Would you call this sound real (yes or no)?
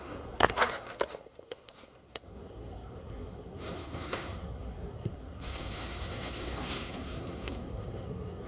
no